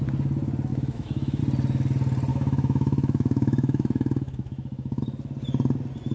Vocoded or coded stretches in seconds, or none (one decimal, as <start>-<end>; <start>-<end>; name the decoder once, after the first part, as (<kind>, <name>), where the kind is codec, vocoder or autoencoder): 0.7-1.4 (autoencoder, DAC-VAE); 2.3-5.0